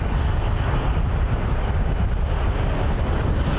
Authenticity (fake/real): real